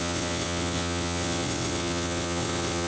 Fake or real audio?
fake